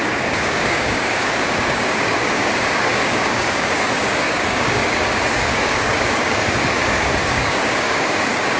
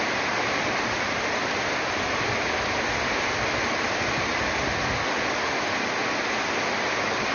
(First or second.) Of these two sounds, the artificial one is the first